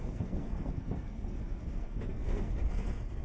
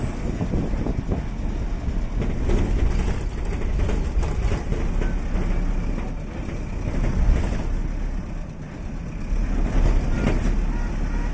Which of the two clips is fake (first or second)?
first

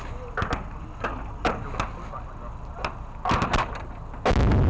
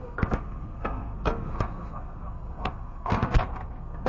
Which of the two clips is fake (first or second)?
second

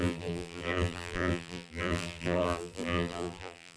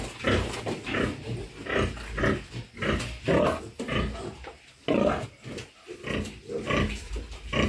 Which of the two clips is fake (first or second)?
first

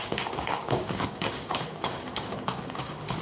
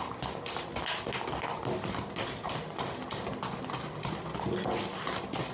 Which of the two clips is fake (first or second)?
first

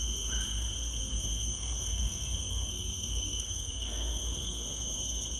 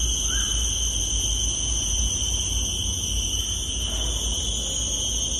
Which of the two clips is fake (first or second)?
first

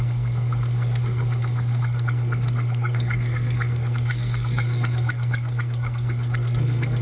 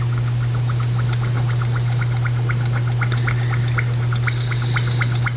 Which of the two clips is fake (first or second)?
first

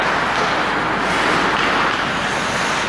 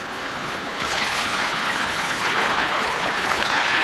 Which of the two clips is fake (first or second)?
second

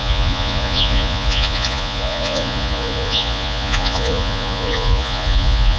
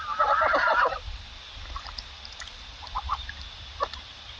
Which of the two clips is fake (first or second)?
first